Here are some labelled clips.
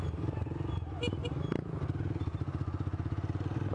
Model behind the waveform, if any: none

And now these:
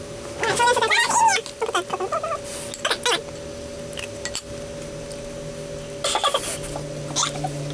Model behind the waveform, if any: none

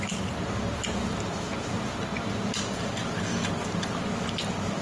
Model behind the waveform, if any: none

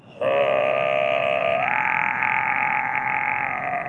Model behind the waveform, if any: none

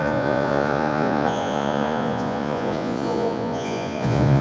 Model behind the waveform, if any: vocoder, Vocos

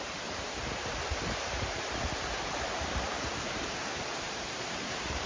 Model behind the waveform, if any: vocoder, BigVGAN v2